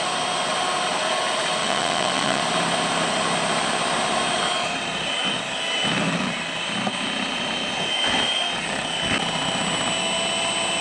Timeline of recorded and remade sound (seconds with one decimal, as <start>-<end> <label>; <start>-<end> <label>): 0.0-1.6 recorded; 1.6-2.4 remade; 2.4-10.8 recorded